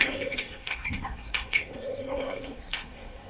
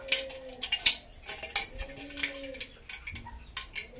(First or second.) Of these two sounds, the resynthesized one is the first